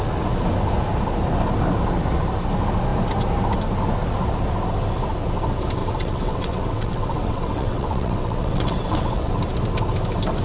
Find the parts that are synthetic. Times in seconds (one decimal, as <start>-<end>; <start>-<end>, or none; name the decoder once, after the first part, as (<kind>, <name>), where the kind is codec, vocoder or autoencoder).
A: 5.8-9.3 (vocoder, WaveNeXt)